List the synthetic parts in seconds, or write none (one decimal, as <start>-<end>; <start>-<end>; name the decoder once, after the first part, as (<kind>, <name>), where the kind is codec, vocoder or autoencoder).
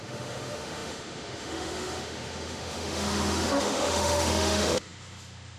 0.0-5.6 (autoencoder, DAC-VAE)